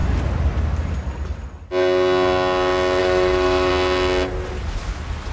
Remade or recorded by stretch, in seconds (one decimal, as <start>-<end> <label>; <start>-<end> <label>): 0.0-3.0 recorded; 3.0-3.7 remade; 3.7-5.3 recorded